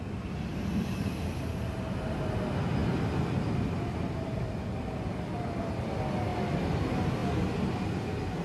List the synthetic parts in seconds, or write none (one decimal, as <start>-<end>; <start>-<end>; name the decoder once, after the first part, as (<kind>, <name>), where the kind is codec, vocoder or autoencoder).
none